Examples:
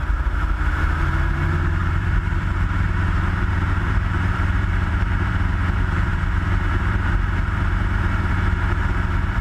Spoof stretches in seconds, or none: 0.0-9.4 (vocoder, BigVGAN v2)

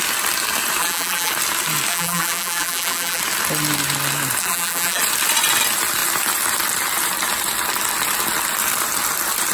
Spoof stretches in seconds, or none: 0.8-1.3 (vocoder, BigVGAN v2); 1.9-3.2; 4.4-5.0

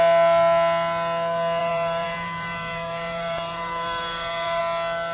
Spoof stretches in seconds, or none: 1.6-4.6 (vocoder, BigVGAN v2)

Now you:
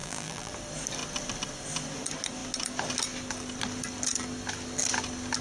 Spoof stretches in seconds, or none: 0.0-0.5 (vocoder, BigVGAN v2)

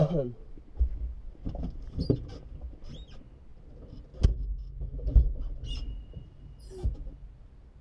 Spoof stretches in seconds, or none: none